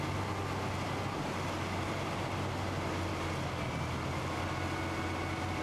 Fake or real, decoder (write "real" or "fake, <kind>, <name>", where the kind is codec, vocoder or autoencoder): real